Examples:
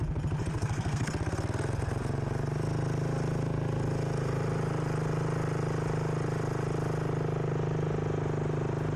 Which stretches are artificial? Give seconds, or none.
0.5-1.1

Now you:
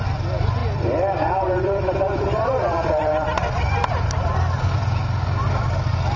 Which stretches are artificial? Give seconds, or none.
0.6-4.1

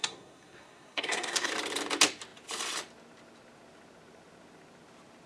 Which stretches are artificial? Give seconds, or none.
0.0-1.5

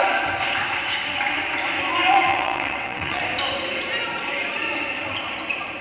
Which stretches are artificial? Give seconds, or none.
2.1-3.2

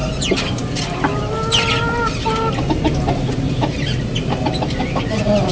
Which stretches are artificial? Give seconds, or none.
none

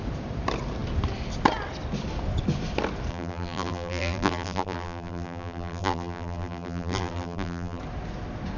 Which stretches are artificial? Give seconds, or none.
3.1-7.8

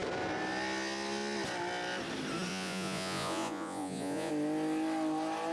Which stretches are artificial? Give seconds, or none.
2.5-4.3